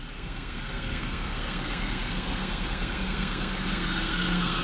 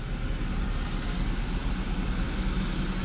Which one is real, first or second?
second